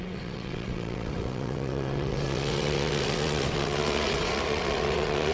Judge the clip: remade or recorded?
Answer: remade